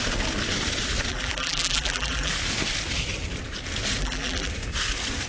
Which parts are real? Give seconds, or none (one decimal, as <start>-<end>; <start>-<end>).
0.0-1.1; 2.3-4.0; 4.5-5.3